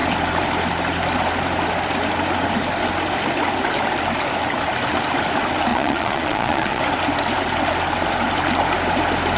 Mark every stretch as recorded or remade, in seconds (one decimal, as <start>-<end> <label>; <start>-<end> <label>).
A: 0.0-5.7 recorded; 5.7-6.8 remade; 6.8-9.4 recorded

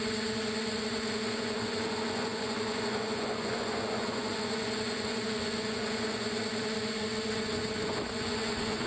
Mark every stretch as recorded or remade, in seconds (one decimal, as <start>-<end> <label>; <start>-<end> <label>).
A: 0.0-8.9 remade

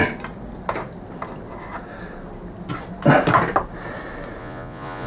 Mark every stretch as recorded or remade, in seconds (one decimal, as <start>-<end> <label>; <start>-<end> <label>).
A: 0.0-4.4 recorded; 4.4-5.1 remade

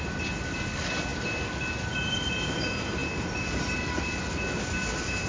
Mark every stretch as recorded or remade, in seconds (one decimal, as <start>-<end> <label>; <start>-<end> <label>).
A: 0.0-5.3 recorded